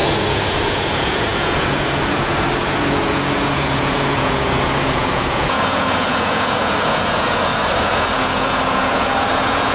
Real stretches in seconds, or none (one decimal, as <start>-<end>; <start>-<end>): none